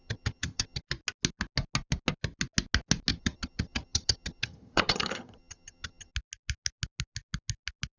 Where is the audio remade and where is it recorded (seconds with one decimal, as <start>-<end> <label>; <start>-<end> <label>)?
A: 0.0-0.8 remade; 0.8-3.1 recorded; 3.1-6.1 remade; 6.1-8.0 recorded